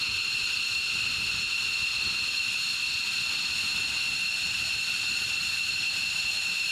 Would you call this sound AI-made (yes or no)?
no